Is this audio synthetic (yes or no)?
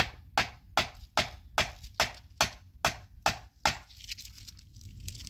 no